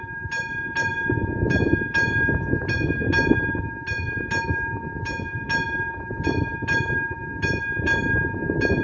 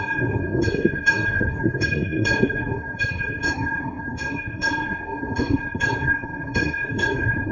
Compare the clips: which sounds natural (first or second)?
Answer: first